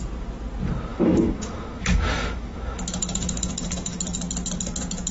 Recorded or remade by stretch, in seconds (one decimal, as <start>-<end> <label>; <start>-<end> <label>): 0.0-0.9 recorded; 0.9-4.0 remade; 4.0-5.1 recorded